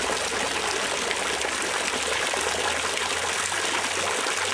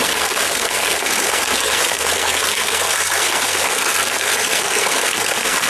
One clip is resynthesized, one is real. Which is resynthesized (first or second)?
second